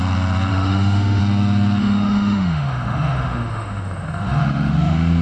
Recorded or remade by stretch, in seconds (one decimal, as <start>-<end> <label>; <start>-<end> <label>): 0.0-0.5 recorded; 0.5-1.2 remade; 1.2-1.8 recorded; 1.8-5.2 remade